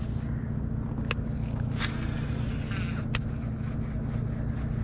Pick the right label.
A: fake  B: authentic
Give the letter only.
B